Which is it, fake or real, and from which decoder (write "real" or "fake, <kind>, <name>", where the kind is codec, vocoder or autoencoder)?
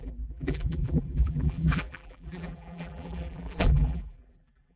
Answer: fake, vocoder, BigVGAN v2